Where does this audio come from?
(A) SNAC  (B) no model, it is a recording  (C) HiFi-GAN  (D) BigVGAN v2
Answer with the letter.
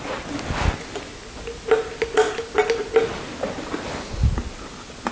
B